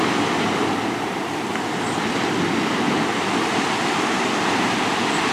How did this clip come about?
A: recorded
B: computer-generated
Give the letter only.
A